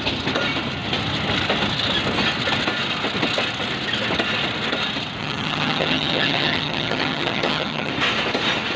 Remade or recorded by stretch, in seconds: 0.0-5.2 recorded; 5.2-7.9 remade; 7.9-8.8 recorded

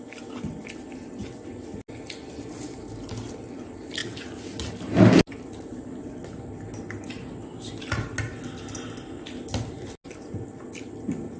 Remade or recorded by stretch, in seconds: 0.0-11.4 recorded

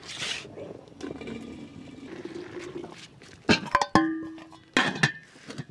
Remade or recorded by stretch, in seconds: 0.0-5.7 recorded

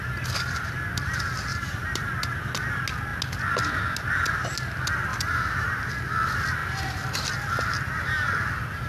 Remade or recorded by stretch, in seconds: 0.0-1.5 recorded; 1.5-2.1 remade; 2.1-5.1 recorded; 5.1-5.9 remade; 5.9-8.9 recorded